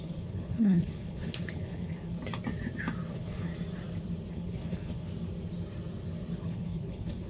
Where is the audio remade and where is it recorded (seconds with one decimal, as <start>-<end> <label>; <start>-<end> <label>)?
0.0-2.2 remade; 2.2-3.1 recorded; 3.1-3.5 remade; 3.5-4.3 recorded; 4.3-5.1 remade; 5.1-6.4 recorded; 6.4-7.3 remade